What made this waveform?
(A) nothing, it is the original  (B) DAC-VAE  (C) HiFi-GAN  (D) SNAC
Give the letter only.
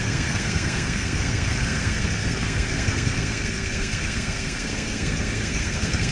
D